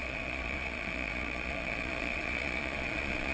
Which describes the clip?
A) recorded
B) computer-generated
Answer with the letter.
B